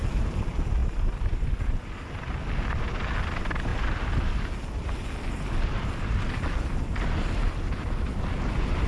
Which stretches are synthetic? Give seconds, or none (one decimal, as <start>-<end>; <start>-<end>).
0.8-1.6